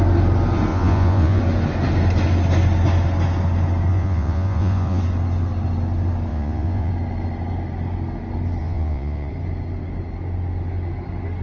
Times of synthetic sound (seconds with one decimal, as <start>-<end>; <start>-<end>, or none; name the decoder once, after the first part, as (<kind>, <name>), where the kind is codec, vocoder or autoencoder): 0.7-1.4 (vocoder, Vocos); 3.9-5.0; 6.3-6.9; 8.6-9.3